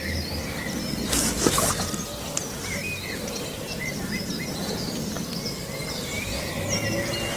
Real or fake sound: real